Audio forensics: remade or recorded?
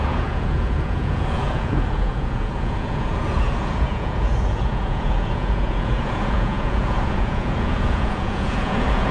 remade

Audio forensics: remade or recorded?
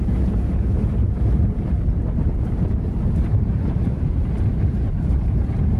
remade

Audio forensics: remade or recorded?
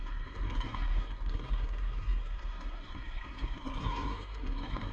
remade